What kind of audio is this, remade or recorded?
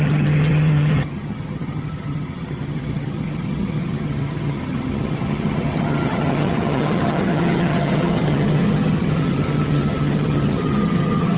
remade